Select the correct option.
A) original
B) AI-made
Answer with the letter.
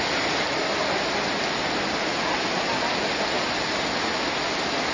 A